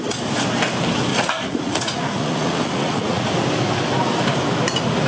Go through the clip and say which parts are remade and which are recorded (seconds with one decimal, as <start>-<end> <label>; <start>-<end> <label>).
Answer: 0.0-1.1 recorded; 1.1-3.3 remade; 3.3-5.1 recorded